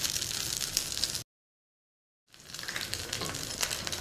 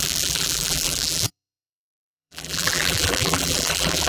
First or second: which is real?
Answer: first